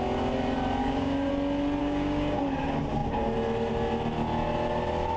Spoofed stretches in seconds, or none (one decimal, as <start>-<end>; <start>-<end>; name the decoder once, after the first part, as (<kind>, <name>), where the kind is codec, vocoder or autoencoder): 0.8-1.3 (codec, DAC); 1.8-2.4